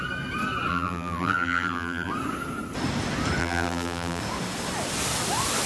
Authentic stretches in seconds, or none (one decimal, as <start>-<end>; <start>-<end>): 0.0-0.7; 2.1-3.4; 4.2-5.7